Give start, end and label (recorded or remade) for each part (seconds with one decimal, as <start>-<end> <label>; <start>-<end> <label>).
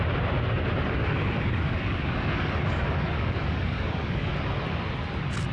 0.0-1.0 recorded; 1.0-4.3 remade; 4.3-5.5 recorded